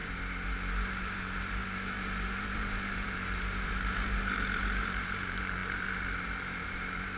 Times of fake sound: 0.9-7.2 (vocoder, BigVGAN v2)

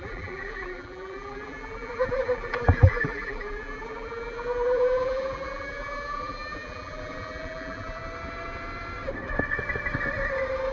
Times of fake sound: 0.0-8.0 (vocoder, BigVGAN v2)

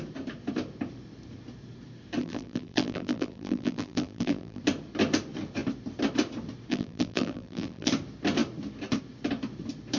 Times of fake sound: 2.2-4.6 (vocoder, BigVGAN v2); 6.7-7.9